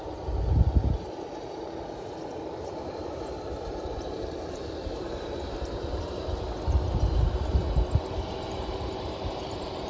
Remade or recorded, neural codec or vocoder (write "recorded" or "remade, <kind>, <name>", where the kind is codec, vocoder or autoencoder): remade, vocoder, BigVGAN v2